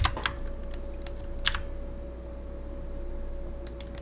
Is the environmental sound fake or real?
real